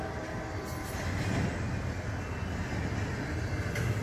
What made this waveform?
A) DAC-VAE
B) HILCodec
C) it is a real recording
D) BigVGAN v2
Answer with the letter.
C